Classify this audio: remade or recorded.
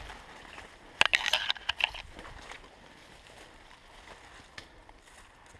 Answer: recorded